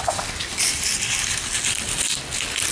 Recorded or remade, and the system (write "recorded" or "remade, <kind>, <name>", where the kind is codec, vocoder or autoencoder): recorded